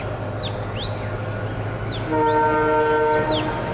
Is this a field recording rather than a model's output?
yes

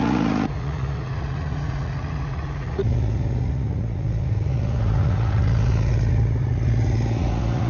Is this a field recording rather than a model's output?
no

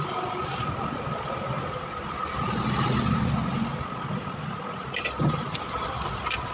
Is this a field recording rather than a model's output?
yes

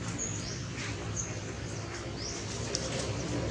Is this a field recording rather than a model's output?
yes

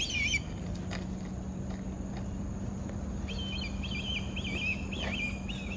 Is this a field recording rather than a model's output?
yes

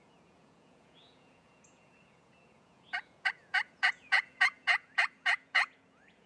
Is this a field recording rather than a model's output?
no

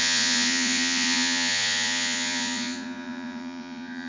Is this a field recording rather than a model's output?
no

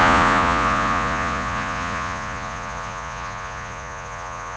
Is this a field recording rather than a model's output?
no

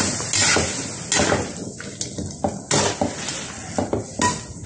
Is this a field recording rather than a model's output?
yes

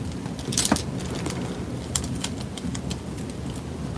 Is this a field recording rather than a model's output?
yes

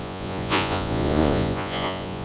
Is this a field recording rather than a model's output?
no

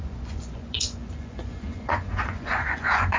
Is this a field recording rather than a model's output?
no